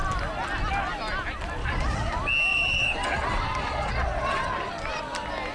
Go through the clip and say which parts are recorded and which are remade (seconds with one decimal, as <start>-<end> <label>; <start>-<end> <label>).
0.0-1.6 recorded; 1.6-2.1 remade; 2.1-2.5 recorded; 2.5-4.7 remade; 4.7-5.5 recorded